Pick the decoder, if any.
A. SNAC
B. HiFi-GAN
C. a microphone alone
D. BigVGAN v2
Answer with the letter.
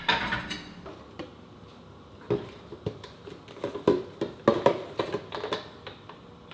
C